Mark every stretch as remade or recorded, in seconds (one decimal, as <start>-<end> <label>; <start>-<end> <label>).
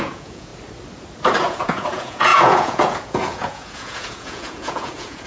0.0-0.5 remade; 0.5-1.4 recorded; 1.4-5.3 remade